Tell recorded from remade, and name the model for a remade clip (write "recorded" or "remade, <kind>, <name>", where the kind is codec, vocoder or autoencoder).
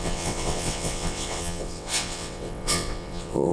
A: remade, vocoder, WaveNeXt